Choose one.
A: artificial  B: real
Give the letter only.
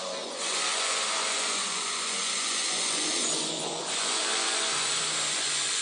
A